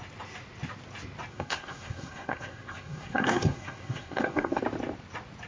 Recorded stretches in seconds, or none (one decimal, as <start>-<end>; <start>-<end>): 0.0-1.3; 4.6-5.5